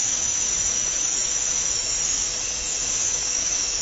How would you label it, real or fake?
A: fake